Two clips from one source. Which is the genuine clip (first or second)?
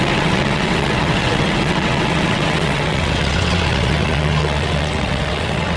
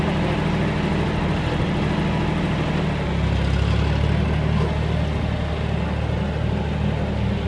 second